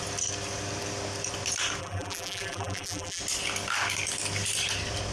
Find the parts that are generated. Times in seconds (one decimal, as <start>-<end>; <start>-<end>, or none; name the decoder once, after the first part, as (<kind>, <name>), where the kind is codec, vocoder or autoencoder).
1.8-3.2 (vocoder, BigVGAN v2)